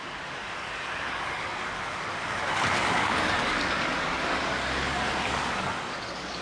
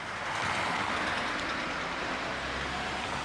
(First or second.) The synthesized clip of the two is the first